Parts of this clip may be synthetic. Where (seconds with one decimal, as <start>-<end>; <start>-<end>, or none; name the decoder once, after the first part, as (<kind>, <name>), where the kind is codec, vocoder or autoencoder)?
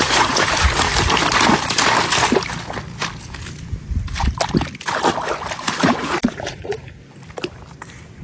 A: 0.0-0.9 (vocoder, Vocos); 5.8-6.8